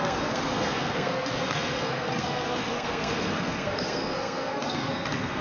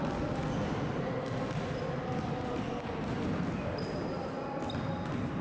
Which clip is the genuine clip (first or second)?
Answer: second